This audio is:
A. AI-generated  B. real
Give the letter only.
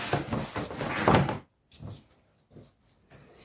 B